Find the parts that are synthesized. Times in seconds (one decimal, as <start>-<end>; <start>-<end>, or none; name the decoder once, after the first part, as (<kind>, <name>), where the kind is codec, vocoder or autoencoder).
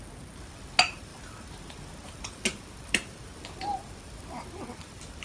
none